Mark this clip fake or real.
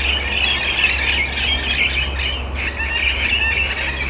real